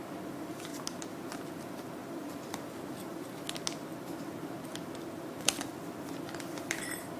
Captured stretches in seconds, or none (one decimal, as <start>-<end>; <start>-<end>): 0.0-7.2